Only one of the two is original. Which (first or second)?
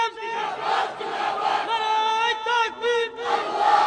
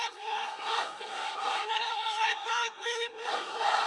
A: first